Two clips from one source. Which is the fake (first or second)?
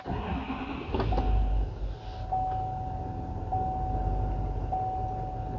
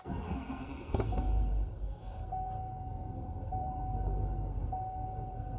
second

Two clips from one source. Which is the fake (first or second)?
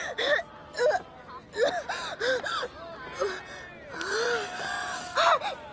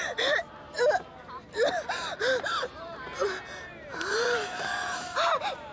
second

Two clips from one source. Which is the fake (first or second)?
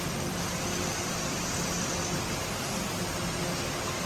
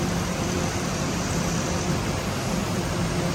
second